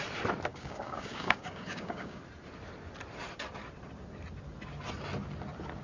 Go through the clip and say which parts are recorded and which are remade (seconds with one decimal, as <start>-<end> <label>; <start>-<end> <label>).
0.0-0.5 recorded; 0.5-2.2 remade; 2.2-5.8 recorded